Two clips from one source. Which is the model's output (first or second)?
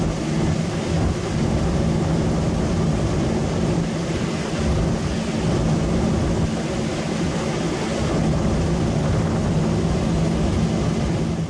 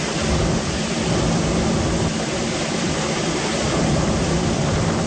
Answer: second